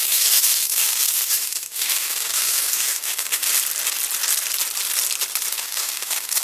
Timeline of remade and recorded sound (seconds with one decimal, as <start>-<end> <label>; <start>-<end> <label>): 0.0-3.5 remade; 3.5-5.5 recorded; 5.5-6.4 remade